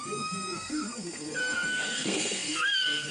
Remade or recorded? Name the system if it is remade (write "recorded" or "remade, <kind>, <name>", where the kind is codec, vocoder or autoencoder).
remade, codec, SNAC